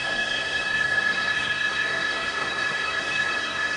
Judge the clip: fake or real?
fake